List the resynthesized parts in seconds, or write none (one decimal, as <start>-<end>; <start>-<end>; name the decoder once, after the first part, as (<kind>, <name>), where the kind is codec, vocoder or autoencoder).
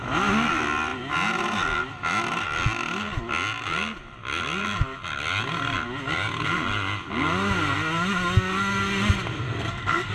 9.4-10.1 (codec, SNAC)